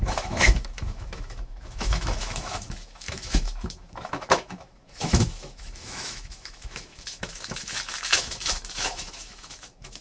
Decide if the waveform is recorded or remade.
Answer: remade